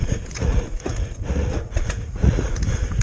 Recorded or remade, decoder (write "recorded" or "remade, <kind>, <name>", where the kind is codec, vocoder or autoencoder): remade, vocoder, Vocos